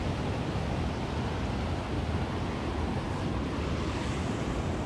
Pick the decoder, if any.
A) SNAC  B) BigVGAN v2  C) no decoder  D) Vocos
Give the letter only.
C